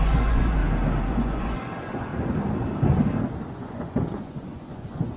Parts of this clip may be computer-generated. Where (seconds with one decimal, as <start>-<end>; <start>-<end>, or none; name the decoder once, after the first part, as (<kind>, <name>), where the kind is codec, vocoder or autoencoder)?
0.0-0.6 (vocoder, Vocos); 1.1-2.1; 3.5-5.2